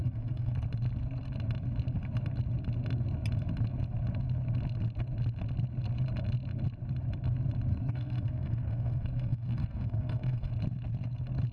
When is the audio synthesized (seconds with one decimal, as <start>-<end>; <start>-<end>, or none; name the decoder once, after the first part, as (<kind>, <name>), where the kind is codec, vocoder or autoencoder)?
0.0-0.5 (codec, SNAC); 7.7-10.5